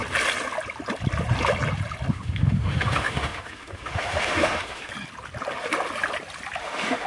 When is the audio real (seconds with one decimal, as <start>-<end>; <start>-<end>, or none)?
0.0-2.1; 4.9-6.6